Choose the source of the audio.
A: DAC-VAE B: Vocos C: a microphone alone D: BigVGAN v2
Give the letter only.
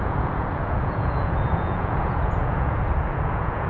B